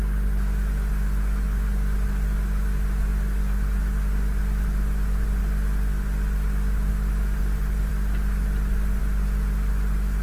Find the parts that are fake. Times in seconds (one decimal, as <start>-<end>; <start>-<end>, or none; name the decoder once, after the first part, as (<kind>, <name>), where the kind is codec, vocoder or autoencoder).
none